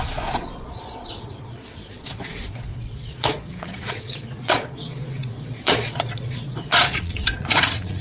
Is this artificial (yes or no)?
yes